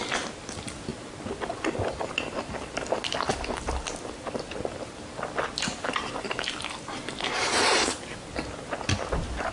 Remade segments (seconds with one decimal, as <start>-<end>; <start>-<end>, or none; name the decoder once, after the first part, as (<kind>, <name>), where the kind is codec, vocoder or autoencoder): none

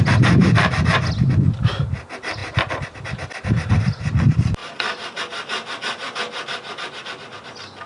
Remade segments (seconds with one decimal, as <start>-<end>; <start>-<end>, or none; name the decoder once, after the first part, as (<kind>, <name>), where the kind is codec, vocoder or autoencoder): none

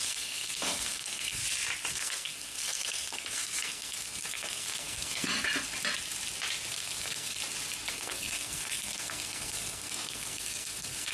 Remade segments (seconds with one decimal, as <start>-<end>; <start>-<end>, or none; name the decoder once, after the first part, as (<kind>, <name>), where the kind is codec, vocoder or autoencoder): 0.0-1.4 (codec, SNAC); 1.9-5.3; 6.7-7.4; 7.9-11.1